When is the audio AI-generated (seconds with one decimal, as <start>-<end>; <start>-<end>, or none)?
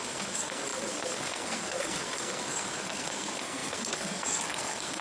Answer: 0.0-5.0